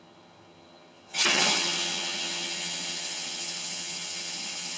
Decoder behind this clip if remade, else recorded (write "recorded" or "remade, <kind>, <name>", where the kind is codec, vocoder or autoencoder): remade, vocoder, HiFi-GAN